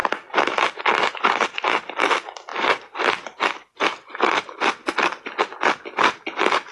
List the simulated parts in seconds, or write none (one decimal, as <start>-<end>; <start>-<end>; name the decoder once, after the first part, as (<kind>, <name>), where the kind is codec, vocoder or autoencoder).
2.5-3.1 (vocoder, BigVGAN v2)